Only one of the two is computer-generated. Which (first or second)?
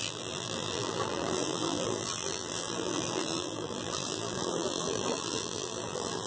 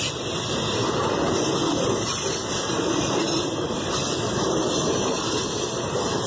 first